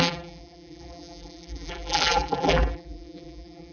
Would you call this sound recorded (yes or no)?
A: no